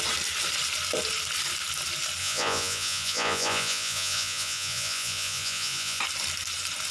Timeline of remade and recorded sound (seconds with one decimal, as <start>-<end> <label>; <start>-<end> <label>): 0.0-2.2 recorded; 2.2-6.0 remade; 6.0-6.9 recorded

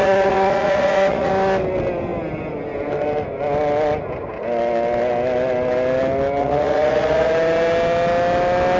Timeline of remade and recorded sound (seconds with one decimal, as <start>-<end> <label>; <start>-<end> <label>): 0.0-1.3 remade; 1.3-6.4 recorded; 6.4-7.3 remade; 7.3-8.8 recorded

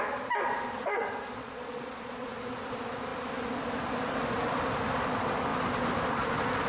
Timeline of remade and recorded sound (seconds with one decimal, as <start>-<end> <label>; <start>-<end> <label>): 0.0-1.4 recorded; 1.4-2.3 remade; 2.3-6.7 recorded

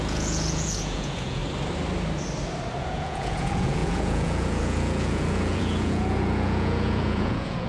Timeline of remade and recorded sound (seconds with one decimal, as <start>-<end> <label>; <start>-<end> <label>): 0.0-1.4 remade; 1.4-2.8 recorded; 2.8-7.7 remade